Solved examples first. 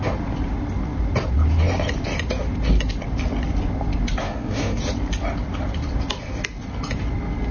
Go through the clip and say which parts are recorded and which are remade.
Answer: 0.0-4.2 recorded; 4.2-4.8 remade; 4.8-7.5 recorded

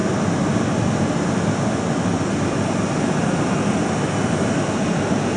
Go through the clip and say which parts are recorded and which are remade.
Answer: 0.0-5.4 recorded